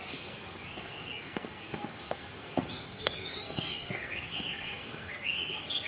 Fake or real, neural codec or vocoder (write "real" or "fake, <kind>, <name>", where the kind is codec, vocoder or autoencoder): fake, codec, SNAC